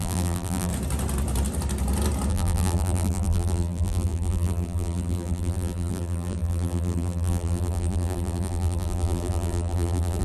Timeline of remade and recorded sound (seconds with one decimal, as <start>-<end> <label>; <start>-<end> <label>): 0.0-0.7 remade; 0.7-2.3 recorded; 2.3-10.2 remade